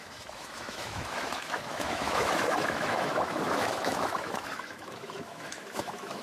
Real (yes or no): no